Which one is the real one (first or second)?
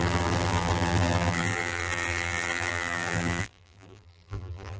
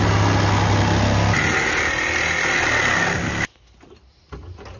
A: second